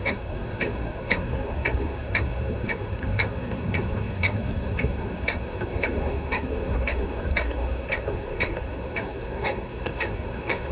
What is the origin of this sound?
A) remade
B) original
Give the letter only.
A